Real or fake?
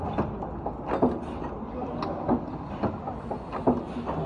real